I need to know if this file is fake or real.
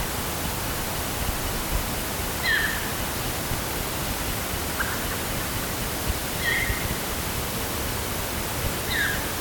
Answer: real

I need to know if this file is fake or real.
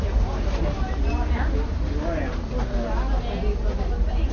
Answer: real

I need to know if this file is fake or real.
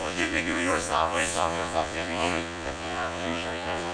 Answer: fake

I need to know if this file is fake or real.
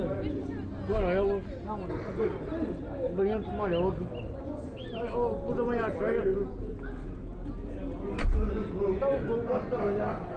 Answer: real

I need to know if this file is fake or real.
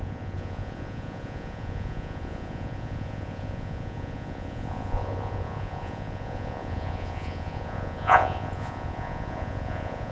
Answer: fake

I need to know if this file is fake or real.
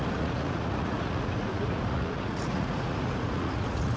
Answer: fake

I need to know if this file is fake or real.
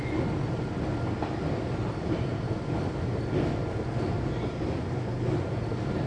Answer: real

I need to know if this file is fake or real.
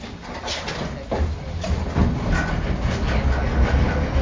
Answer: real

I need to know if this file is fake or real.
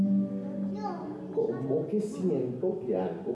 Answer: real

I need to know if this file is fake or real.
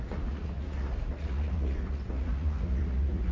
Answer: fake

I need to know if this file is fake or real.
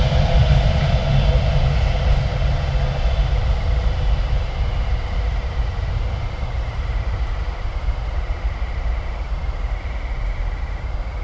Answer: real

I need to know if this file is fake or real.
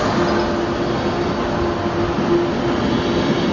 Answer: real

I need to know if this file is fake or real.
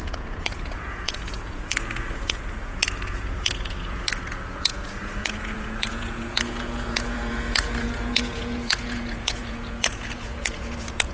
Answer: fake